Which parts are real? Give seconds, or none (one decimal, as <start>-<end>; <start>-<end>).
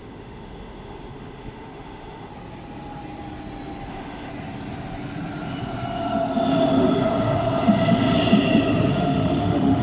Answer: 2.3-3.9; 4.3-8.9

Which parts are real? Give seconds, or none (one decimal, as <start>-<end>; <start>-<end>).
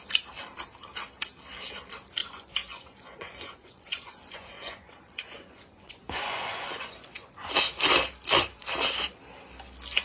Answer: 0.0-2.2; 7.5-10.0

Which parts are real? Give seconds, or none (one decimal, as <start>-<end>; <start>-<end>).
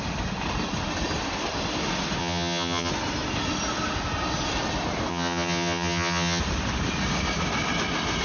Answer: 0.0-2.2; 2.9-5.1; 6.4-8.2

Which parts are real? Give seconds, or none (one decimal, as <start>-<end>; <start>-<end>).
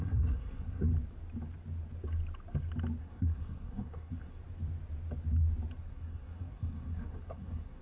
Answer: 0.9-3.0; 4.4-5.8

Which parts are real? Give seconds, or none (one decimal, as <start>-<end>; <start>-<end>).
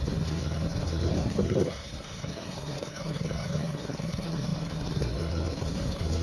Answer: none